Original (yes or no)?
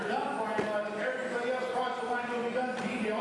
yes